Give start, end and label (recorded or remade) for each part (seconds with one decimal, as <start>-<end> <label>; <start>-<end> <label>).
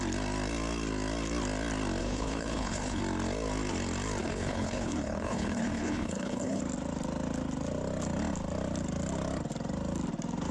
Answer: 0.0-2.0 recorded; 2.0-3.0 remade; 3.0-4.2 recorded; 4.2-6.6 remade; 6.6-10.5 recorded